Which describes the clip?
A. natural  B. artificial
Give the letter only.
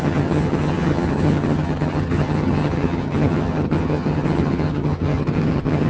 B